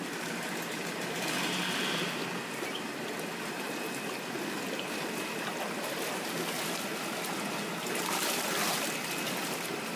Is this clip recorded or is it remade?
recorded